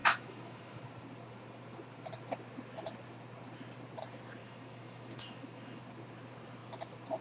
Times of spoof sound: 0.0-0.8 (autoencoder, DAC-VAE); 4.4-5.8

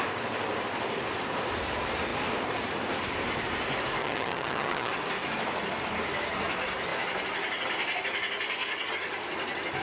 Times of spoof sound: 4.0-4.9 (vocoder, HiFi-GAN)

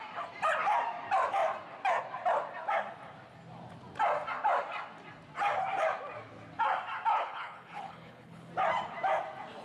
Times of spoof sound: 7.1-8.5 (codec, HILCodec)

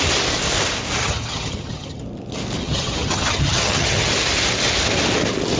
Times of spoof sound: 1.0-2.0 (vocoder, HiFi-GAN); 2.6-4.1

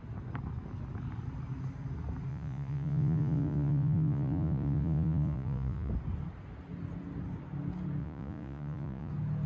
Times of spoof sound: 2.3-5.9 (vocoder, Vocos); 8.0-9.1

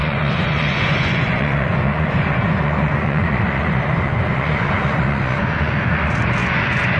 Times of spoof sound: 0.0-7.0 (vocoder, Vocos)

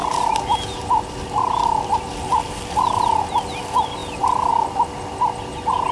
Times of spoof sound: none

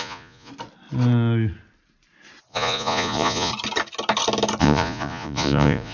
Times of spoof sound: 0.0-0.5 (vocoder, Vocos); 2.5-3.5; 4.6-5.9